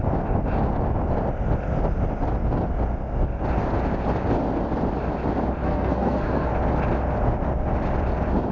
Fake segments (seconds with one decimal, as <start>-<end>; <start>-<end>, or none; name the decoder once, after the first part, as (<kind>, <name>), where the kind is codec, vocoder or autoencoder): 5.6-6.5 (codec, SNAC)